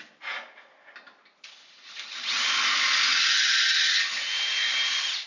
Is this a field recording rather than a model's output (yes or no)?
yes